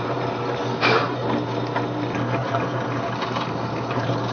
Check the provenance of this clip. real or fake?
real